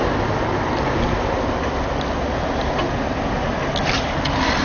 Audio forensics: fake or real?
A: real